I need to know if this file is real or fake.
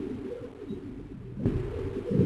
real